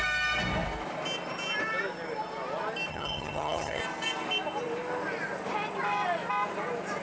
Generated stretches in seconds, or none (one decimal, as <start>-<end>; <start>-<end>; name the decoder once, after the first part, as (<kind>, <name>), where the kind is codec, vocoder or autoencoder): 2.9-3.8 (vocoder, HiFi-GAN)